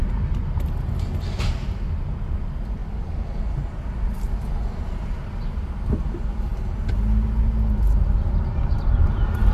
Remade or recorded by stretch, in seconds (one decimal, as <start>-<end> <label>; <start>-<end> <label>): 0.0-9.5 recorded